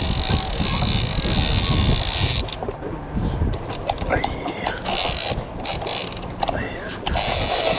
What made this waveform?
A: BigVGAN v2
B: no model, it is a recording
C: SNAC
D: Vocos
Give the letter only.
B